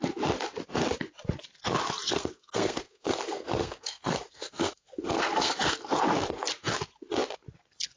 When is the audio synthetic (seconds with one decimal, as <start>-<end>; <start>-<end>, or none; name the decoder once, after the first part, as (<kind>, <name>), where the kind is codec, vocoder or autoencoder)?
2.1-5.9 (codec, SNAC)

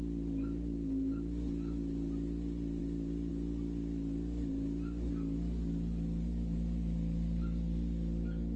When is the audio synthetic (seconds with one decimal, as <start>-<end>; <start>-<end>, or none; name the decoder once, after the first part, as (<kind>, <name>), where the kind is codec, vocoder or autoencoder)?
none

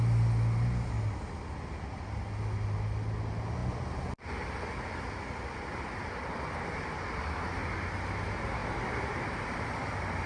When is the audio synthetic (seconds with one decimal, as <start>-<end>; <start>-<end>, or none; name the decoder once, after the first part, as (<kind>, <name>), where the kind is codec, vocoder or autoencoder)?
none

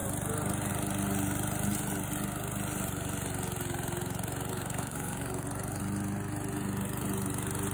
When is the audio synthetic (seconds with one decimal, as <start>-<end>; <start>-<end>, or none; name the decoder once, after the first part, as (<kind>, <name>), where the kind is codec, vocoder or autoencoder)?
4.5-5.8 (codec, SNAC)

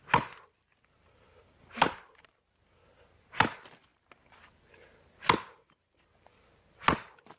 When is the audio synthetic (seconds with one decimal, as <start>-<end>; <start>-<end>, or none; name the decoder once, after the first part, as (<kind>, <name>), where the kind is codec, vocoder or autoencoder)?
none